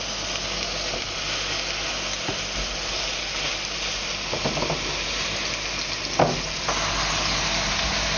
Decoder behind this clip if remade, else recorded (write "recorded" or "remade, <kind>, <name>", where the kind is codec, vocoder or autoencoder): recorded